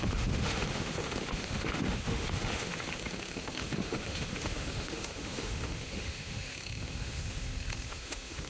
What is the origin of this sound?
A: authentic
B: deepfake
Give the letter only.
B